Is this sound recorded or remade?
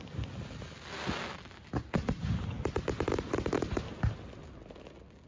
recorded